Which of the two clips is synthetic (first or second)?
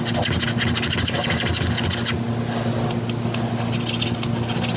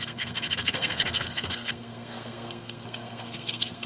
second